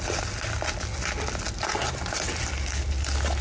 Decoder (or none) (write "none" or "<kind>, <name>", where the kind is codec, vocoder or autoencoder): none